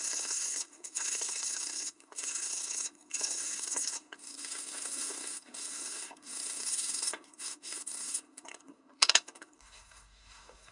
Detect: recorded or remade remade